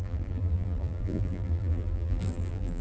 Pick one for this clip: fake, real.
fake